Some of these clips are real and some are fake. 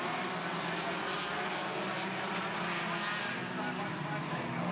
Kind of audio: real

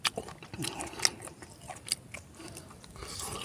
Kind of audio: real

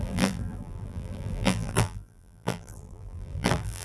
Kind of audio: fake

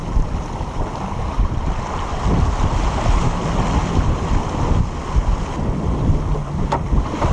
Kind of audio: real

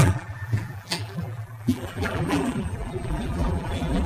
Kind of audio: fake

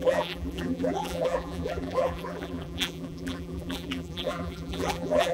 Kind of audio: fake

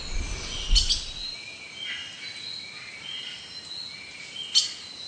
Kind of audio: real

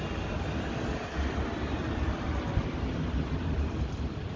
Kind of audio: real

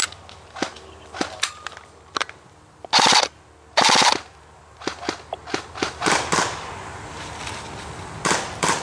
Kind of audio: real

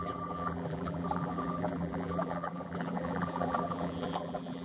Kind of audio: fake